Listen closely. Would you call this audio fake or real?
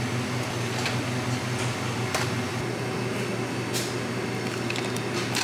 real